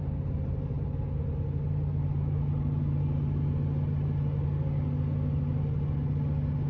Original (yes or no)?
yes